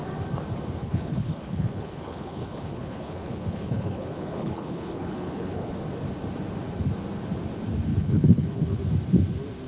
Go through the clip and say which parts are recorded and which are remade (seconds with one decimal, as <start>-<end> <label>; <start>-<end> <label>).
0.0-0.8 recorded; 0.8-5.7 remade; 5.7-7.9 recorded; 7.9-8.8 remade; 8.8-9.7 recorded

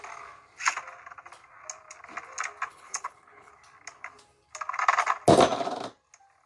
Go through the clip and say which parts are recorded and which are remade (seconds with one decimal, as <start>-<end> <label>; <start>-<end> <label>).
0.0-2.7 recorded; 2.7-3.5 remade; 3.5-6.5 recorded

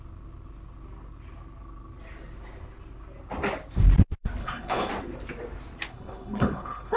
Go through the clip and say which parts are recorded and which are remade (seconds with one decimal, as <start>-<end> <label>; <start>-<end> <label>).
0.0-4.4 recorded; 4.4-4.9 remade; 4.9-5.9 recorded; 5.9-7.0 remade